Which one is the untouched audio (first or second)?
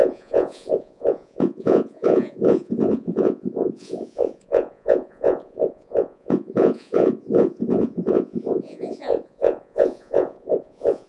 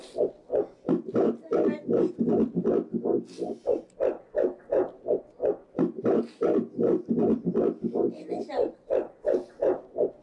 second